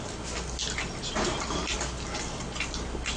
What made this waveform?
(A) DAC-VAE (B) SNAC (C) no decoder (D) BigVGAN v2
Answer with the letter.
C